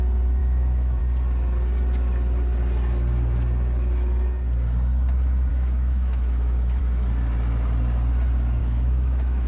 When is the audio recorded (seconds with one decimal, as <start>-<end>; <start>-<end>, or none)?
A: 0.0-0.4; 1.0-5.5; 6.8-8.6